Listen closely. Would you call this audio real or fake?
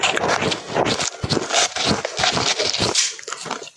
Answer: real